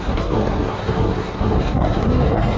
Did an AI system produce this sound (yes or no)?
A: yes